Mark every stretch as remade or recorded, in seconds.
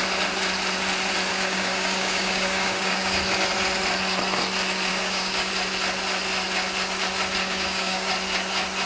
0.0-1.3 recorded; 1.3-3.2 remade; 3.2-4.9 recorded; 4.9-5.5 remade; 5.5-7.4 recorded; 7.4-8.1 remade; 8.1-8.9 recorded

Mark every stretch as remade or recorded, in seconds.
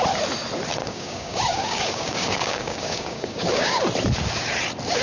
0.0-0.8 recorded; 0.8-3.8 remade; 3.8-5.0 recorded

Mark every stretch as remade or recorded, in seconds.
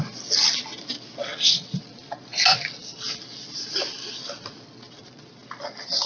0.0-6.1 recorded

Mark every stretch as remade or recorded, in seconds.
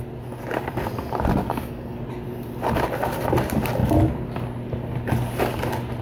0.0-1.4 recorded; 1.4-2.0 remade; 2.0-6.0 recorded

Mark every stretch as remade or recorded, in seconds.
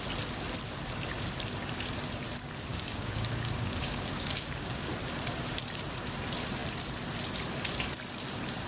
0.0-2.7 recorded; 2.7-4.9 remade; 4.9-8.7 recorded